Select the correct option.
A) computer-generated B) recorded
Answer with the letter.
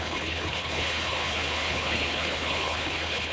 A